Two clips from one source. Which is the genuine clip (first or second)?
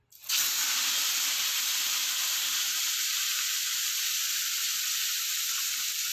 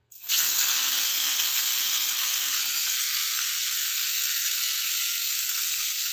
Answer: first